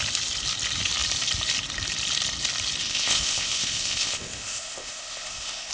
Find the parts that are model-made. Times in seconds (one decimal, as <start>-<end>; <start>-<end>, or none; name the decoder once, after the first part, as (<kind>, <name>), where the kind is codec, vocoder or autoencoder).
2.8-5.7 (codec, ZipCodec)